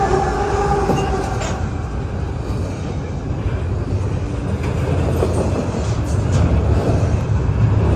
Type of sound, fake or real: real